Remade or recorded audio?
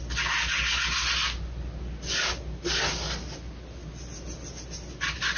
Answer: recorded